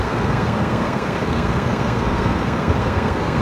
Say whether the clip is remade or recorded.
remade